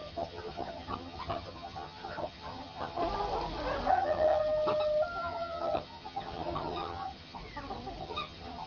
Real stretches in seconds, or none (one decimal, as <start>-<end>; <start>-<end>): 3.0-3.9; 4.4-5.2; 7.4-8.0